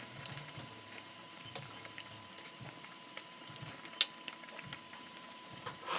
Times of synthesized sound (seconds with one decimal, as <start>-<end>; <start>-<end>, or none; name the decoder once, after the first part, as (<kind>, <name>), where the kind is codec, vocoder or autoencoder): 0.0-3.7 (vocoder, BigVGAN v2); 4.9-6.0